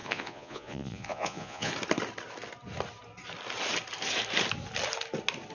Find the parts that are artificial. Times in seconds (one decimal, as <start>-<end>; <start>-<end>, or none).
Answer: 0.0-1.7